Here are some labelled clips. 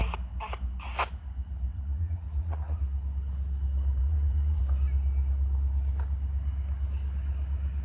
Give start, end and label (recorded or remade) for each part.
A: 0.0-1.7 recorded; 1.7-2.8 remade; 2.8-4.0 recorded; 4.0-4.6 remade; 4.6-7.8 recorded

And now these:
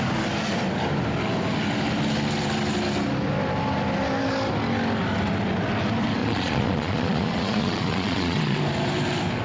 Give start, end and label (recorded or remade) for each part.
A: 0.0-6.2 recorded; 6.2-8.6 remade; 8.6-9.4 recorded

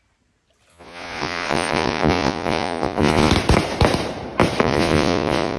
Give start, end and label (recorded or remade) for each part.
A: 0.0-0.7 recorded; 0.7-3.3 remade; 3.3-4.6 recorded; 4.6-5.6 remade

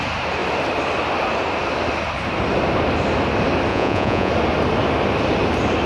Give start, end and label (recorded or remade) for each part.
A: 0.0-3.7 recorded; 3.7-4.3 remade; 4.3-5.9 recorded

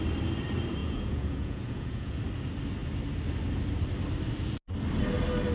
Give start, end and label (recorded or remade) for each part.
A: 0.0-0.8 recorded; 0.8-2.2 remade; 2.2-5.5 recorded

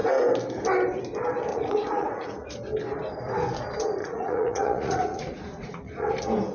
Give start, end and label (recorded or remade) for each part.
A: 0.0-1.5 recorded; 1.5-2.5 remade; 2.5-4.0 recorded; 4.0-6.1 remade; 6.1-6.5 recorded

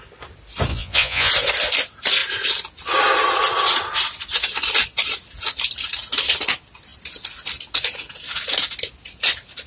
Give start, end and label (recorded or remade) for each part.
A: 0.0-0.7 recorded; 0.7-1.3 remade; 1.3-9.7 recorded

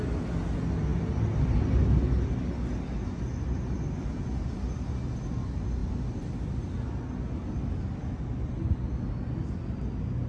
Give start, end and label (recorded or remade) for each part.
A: 0.0-10.3 recorded